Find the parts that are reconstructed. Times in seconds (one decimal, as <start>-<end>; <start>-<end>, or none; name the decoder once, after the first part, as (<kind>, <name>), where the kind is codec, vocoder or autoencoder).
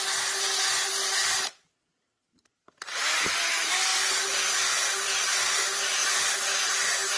none